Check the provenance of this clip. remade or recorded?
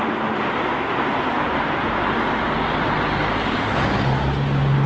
recorded